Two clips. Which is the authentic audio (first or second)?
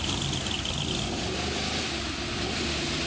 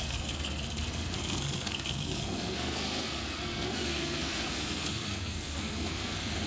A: first